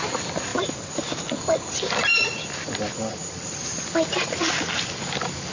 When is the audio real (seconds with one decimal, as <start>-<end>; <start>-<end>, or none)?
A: 0.0-5.5